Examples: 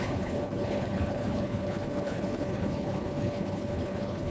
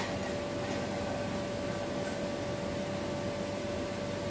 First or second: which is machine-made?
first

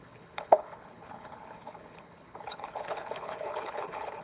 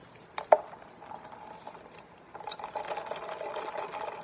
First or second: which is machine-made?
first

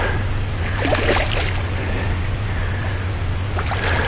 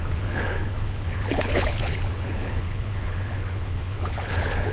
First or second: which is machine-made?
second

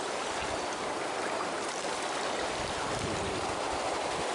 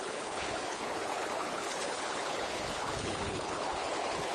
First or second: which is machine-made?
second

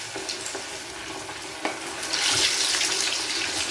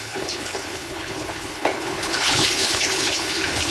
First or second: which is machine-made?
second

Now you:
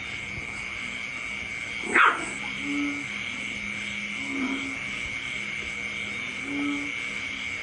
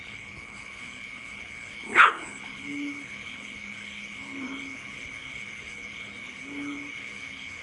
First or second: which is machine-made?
second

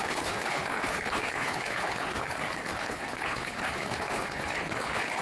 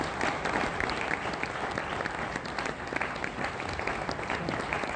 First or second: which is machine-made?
first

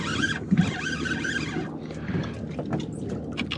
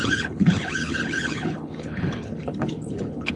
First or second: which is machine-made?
second